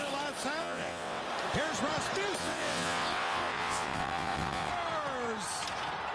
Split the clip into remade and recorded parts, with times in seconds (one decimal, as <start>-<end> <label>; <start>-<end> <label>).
0.0-0.6 recorded; 0.6-1.2 remade; 1.2-2.4 recorded; 2.4-4.7 remade; 4.7-6.1 recorded